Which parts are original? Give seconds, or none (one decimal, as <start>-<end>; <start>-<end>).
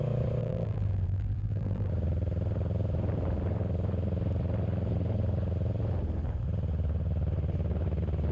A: 0.0-0.4; 1.9-8.3